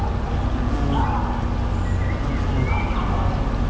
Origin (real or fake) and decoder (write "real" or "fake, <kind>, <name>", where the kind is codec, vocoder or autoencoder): real